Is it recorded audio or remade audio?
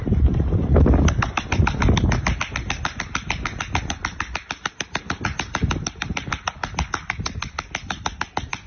recorded